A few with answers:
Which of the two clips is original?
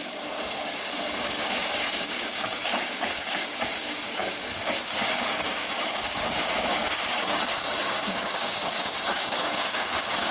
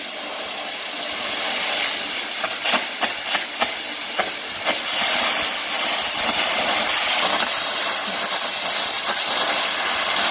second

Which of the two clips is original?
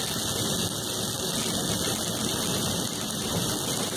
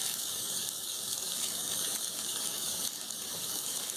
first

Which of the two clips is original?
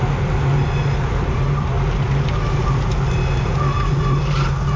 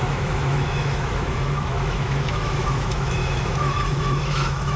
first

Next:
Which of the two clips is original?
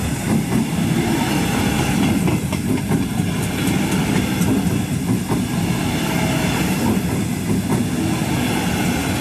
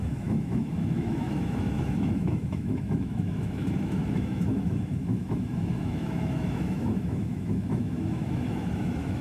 first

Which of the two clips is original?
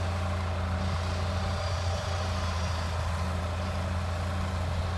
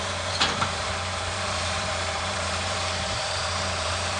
first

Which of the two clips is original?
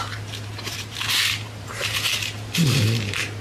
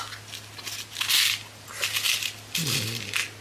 second